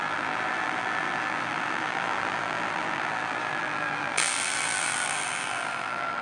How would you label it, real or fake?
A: fake